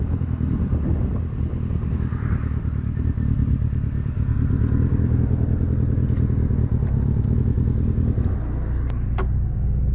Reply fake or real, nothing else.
real